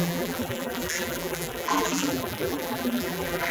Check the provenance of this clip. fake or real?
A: fake